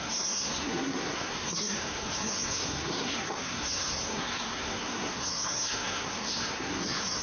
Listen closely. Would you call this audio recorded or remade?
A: remade